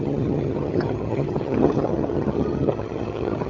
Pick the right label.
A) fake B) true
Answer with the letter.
A